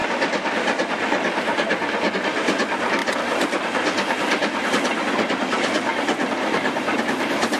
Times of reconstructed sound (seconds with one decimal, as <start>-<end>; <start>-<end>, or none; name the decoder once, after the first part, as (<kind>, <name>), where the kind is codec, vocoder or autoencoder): none